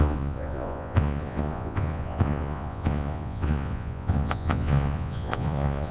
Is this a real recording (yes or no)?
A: no